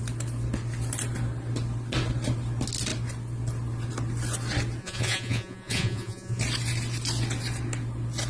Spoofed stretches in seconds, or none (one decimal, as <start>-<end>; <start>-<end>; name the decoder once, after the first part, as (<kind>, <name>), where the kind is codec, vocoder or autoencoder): 4.8-6.4 (vocoder, Vocos)